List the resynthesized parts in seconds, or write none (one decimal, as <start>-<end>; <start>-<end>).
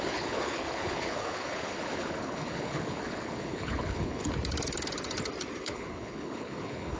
0.0-4.2; 5.6-7.0